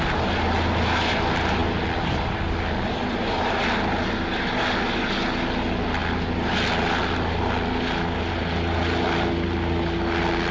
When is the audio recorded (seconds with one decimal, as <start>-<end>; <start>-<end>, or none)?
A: 0.0-10.5